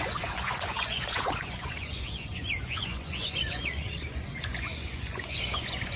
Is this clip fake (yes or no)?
yes